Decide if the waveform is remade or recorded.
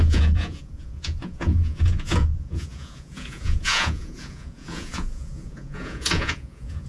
remade